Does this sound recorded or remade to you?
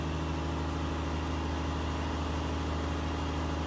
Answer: recorded